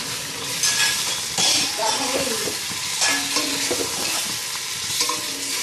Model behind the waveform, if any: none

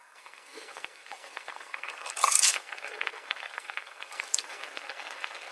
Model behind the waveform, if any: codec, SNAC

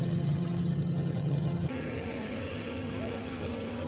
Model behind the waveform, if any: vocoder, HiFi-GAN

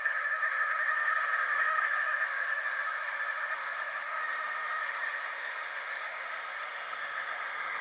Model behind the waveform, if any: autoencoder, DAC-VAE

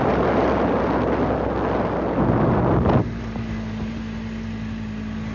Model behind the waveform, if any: none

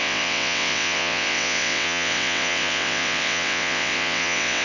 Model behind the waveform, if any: vocoder, WaveNeXt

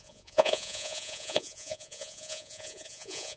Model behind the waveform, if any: vocoder, Vocos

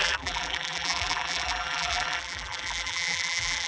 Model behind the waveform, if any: vocoder, BigVGAN v2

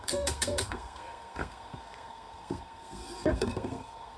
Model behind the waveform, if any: codec, SNAC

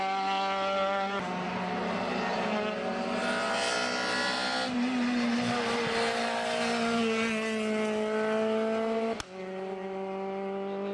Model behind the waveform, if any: none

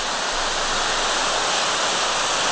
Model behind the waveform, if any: none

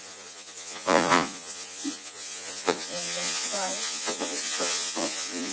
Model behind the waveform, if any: vocoder, Vocos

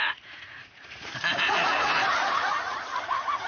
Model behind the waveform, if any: vocoder, Vocos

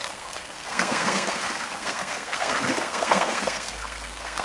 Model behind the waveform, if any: codec, SNAC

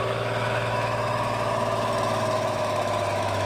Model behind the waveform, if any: autoencoder, DAC-VAE